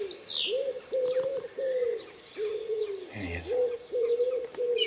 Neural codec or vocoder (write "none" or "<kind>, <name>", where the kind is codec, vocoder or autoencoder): none